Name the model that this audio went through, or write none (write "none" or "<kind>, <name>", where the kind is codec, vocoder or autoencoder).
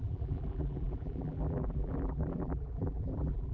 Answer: vocoder, BigVGAN v2